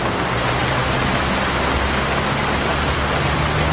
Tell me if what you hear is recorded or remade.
recorded